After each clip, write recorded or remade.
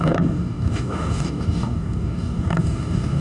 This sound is remade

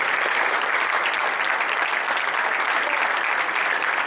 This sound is recorded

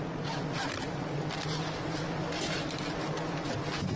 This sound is recorded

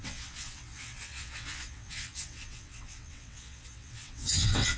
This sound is remade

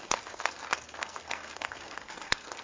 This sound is remade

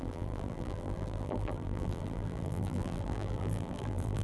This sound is remade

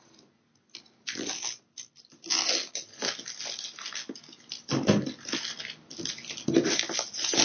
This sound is recorded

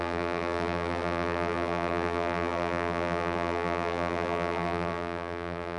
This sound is remade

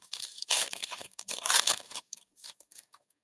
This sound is remade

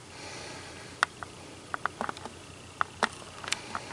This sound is recorded